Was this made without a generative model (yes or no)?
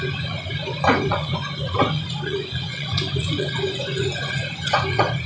no